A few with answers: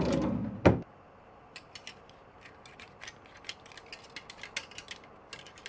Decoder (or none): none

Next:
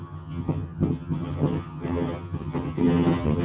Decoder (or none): vocoder, HiFi-GAN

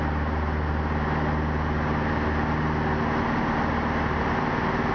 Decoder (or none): none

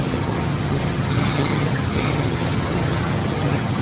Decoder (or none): vocoder, HiFi-GAN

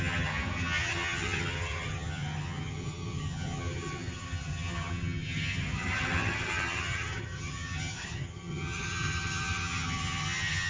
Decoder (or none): vocoder, HiFi-GAN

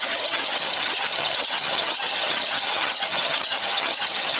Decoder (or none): vocoder, HiFi-GAN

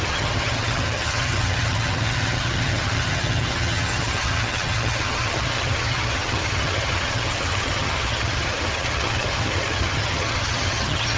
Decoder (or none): vocoder, HiFi-GAN